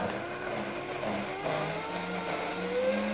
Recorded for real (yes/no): yes